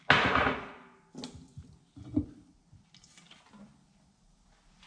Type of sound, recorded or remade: recorded